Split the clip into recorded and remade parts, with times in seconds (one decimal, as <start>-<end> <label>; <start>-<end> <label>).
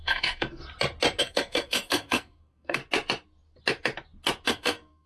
0.0-0.6 remade; 0.6-1.2 recorded; 1.2-2.8 remade; 2.8-4.5 recorded; 4.5-5.1 remade